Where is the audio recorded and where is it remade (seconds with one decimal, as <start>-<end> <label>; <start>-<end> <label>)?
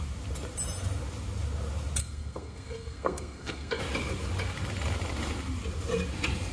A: 0.0-2.0 recorded; 2.0-3.8 remade; 3.8-6.5 recorded